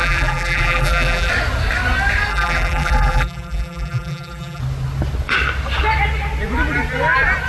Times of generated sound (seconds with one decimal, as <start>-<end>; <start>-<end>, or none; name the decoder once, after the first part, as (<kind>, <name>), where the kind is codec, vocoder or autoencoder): 0.0-1.3 (vocoder, BigVGAN v2); 2.3-4.6